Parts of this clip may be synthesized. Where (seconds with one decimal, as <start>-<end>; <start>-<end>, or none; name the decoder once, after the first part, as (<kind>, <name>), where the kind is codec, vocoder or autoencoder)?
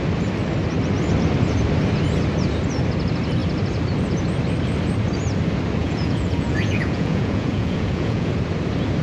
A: 5.8-8.3 (vocoder, Vocos)